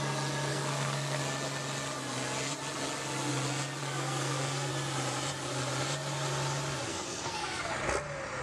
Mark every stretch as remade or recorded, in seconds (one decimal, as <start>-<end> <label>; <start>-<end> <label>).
0.0-0.5 recorded; 0.5-1.2 remade; 1.2-3.8 recorded; 3.8-4.7 remade; 4.7-6.9 recorded; 6.9-7.7 remade; 7.7-8.4 recorded